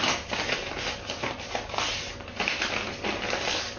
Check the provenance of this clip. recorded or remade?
recorded